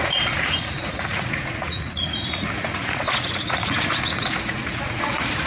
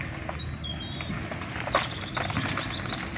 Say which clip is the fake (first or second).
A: first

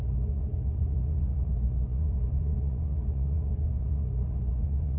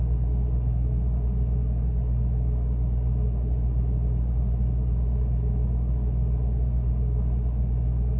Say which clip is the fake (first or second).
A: first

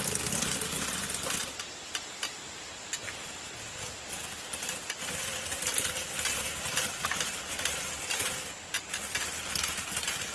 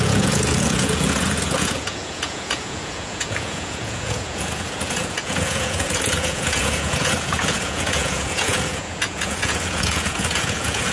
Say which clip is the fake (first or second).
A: second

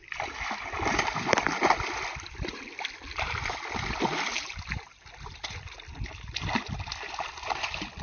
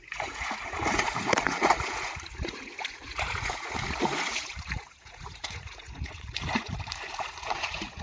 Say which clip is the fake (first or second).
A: second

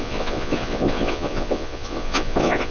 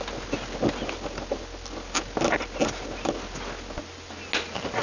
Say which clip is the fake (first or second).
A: first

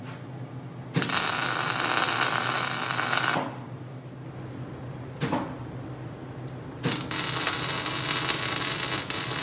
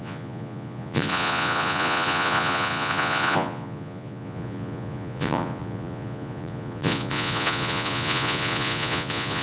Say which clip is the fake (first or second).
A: second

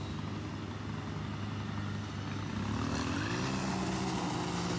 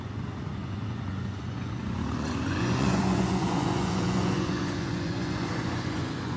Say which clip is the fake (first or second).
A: second